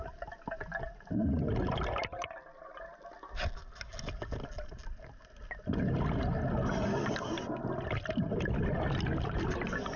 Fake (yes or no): no